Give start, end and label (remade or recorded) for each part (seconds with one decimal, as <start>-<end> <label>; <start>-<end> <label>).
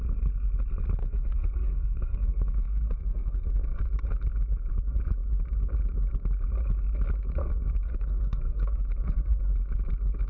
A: 0.0-1.0 recorded; 1.0-3.8 remade; 3.8-7.4 recorded; 7.4-9.4 remade; 9.4-10.3 recorded